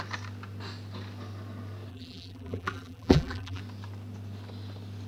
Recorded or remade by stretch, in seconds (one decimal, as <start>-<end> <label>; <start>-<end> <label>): 0.0-1.9 recorded; 1.9-3.6 remade; 3.6-5.1 recorded